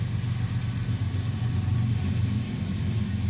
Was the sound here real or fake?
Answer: real